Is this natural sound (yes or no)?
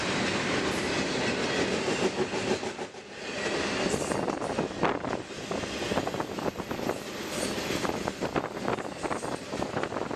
yes